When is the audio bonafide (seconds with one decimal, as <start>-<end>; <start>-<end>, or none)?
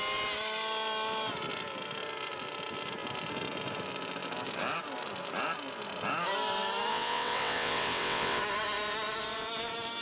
0.0-6.9; 8.4-10.0